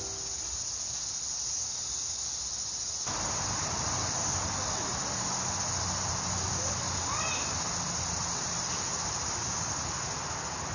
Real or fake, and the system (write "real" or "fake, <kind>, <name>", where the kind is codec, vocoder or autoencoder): real